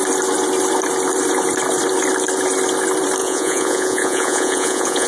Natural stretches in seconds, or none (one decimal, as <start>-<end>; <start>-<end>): 0.0-3.2